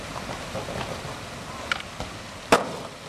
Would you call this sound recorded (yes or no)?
yes